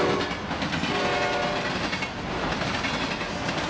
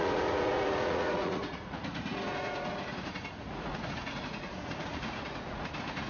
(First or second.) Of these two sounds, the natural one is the first